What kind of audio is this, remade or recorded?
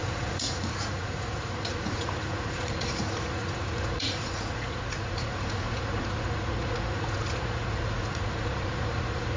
remade